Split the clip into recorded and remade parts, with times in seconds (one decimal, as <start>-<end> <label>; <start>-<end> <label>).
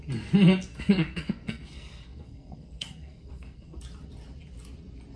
0.0-0.7 recorded; 0.7-3.8 remade; 3.8-5.2 recorded